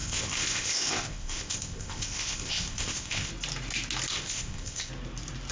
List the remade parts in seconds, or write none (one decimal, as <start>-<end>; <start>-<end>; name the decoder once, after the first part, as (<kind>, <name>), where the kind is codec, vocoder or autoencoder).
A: 0.0-3.3 (codec, ZipCodec); 4.1-4.9